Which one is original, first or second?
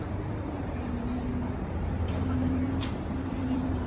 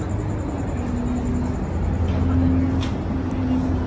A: second